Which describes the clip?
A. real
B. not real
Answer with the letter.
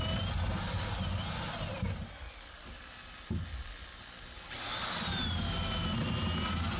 A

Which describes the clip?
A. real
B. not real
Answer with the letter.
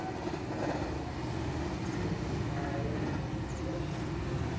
A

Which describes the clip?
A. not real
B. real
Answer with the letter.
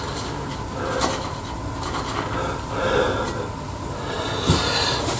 B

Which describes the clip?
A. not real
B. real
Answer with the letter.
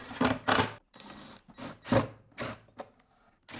B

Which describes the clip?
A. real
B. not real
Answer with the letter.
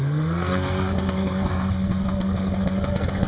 B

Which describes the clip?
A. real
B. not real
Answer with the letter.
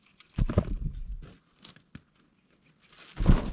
A